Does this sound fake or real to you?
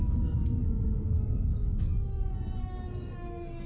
fake